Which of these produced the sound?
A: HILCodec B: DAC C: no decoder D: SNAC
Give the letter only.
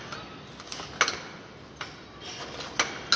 C